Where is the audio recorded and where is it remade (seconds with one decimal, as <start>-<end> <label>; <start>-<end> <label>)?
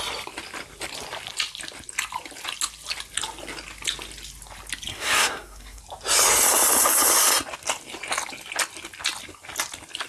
0.0-4.9 recorded; 4.9-5.8 remade; 5.8-10.1 recorded